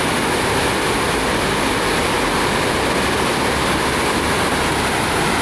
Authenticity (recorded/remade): recorded